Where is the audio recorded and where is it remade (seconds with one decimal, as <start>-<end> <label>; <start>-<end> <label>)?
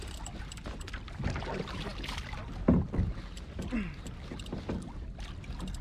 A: 0.0-5.8 recorded